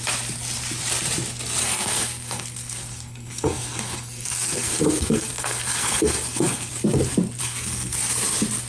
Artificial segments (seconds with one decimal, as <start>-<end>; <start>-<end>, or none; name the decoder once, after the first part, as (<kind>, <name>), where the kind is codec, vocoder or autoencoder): 1.6-6.7 (codec, SNAC); 7.4-8.1